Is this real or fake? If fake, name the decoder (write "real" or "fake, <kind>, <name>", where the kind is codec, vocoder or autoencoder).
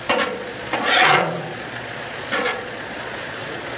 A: fake, vocoder, Vocos